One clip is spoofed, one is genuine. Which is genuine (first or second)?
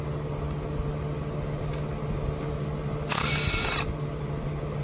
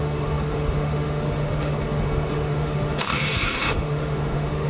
first